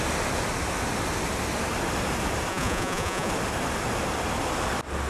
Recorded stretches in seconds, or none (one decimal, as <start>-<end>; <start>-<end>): 0.0-2.5; 3.3-5.1